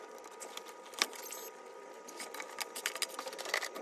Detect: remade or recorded recorded